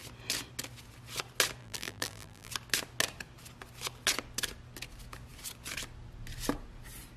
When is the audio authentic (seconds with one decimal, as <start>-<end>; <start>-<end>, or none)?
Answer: 0.0-1.6; 2.5-7.2